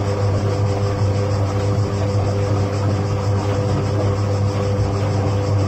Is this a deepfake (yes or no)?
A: no